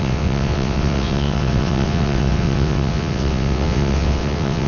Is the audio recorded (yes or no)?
no